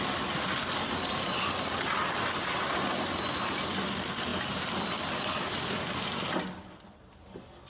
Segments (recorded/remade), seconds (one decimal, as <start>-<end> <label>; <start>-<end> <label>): 0.0-7.7 recorded